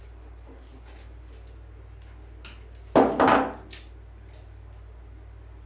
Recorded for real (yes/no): yes